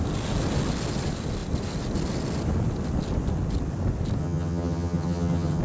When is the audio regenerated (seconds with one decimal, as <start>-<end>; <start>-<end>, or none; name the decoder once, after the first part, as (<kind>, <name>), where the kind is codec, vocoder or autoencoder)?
4.2-5.6 (vocoder, HiFi-GAN)